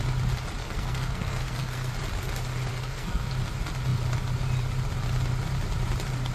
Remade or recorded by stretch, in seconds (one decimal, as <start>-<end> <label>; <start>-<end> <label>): 0.0-0.6 recorded; 0.6-1.9 remade; 1.9-2.7 recorded; 2.7-3.3 remade; 3.3-6.3 recorded